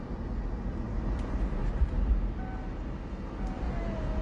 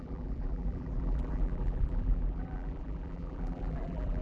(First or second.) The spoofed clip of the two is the second